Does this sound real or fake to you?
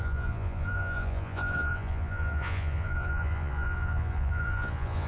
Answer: fake